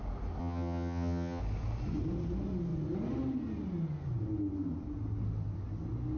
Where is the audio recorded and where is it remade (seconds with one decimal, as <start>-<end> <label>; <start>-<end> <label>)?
0.0-0.4 recorded; 0.4-1.4 remade; 1.4-6.2 recorded